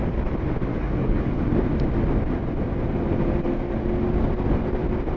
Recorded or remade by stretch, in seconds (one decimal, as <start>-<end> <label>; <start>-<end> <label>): 0.0-0.7 recorded; 0.7-1.4 remade; 1.4-5.2 recorded